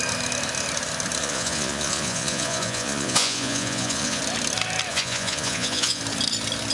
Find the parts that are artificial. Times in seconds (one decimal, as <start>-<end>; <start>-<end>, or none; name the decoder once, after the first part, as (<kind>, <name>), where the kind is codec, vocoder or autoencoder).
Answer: 1.2-4.2 (vocoder, Vocos); 4.9-6.0